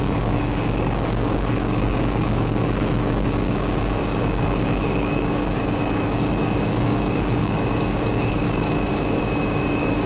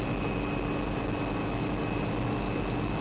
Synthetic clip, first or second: first